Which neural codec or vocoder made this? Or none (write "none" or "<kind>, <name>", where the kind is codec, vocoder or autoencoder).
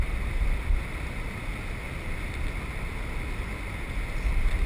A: none